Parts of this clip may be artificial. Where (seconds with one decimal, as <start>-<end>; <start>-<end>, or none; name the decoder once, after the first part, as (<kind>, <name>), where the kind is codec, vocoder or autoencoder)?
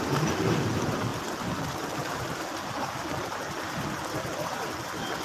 none